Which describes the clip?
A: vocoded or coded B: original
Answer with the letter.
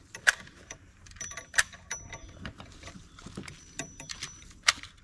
A